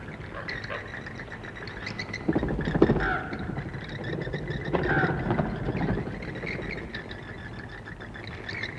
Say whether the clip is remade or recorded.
recorded